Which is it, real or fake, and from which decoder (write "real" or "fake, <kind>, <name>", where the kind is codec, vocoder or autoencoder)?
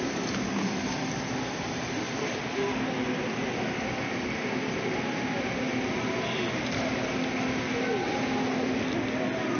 real